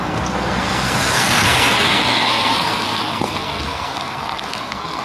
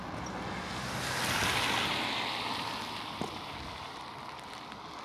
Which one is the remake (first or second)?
first